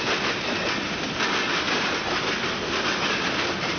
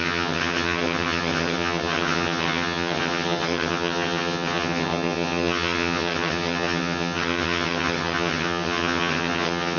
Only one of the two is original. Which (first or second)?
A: first